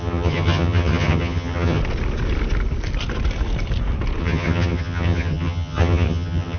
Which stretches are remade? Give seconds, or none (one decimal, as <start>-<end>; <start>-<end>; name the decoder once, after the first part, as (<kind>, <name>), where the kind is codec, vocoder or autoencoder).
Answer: 0.0-1.8 (vocoder, HiFi-GAN); 4.2-6.6